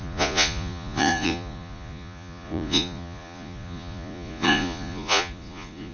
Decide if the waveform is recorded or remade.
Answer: remade